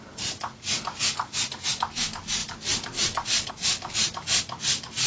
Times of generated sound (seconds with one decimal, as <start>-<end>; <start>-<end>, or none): 2.4-3.5